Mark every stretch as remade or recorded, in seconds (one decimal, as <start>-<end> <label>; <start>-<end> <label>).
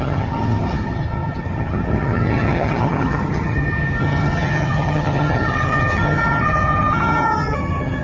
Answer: 0.0-8.0 remade